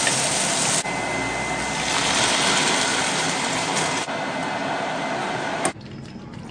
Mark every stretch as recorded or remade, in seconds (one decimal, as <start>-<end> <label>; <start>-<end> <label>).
0.0-2.9 recorded; 2.9-3.8 remade; 3.8-6.5 recorded